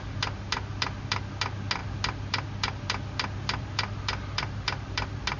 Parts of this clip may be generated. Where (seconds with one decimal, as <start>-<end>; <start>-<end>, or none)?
none